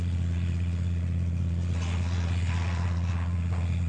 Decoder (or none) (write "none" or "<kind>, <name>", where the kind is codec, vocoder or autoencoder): vocoder, Vocos